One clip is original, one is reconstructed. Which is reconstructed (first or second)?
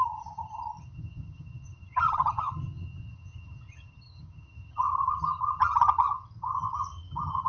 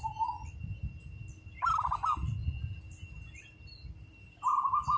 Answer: first